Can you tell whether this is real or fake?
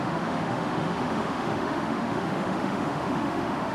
fake